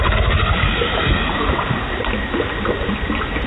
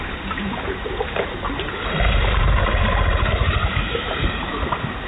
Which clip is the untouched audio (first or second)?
first